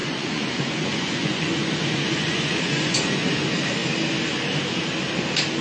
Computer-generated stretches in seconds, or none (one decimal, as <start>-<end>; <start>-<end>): 0.0-3.3